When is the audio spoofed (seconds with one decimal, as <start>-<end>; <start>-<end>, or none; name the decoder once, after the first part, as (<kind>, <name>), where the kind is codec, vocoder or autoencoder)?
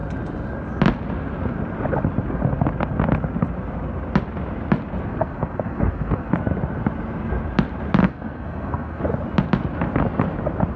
5.1-6.3 (codec, SNAC); 8.0-9.0